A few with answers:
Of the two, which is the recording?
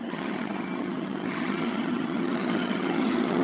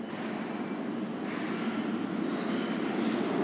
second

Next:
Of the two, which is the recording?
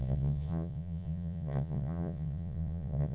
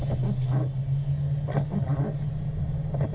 second